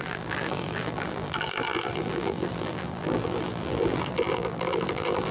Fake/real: fake